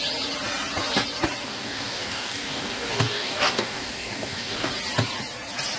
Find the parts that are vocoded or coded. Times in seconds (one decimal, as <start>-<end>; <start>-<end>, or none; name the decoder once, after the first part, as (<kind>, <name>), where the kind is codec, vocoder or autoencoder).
1.4-4.7 (codec, DAC)

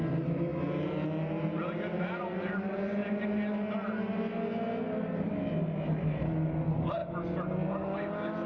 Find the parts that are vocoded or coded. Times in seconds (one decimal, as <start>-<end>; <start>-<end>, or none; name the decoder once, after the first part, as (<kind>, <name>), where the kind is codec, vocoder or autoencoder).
none

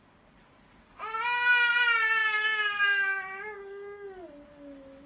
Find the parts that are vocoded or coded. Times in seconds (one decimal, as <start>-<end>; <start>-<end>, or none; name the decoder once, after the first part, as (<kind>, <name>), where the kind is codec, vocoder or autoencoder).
2.2-4.3 (codec, DAC)

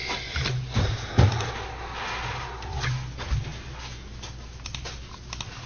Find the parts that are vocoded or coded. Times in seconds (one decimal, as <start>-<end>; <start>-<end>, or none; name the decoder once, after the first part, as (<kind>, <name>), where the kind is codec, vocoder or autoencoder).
none

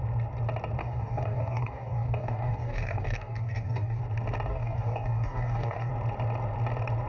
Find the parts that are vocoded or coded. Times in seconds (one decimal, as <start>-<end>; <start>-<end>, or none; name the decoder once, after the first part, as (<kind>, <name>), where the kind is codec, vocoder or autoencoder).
0.8-4.0 (codec, DAC); 4.5-5.9

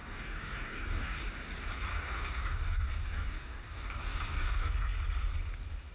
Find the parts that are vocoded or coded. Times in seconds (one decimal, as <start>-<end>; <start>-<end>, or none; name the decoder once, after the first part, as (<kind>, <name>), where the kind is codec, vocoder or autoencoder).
0.0-1.2 (codec, DAC); 1.9-4.7